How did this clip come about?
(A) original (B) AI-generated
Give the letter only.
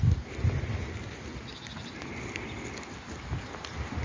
A